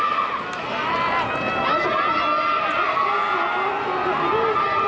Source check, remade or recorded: recorded